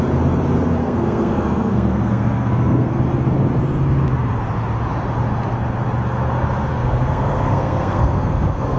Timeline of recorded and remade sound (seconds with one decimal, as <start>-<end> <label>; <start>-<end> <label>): 0.0-0.8 recorded; 0.8-2.9 remade; 2.9-6.8 recorded; 6.8-8.8 remade